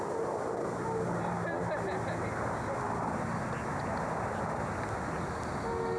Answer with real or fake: real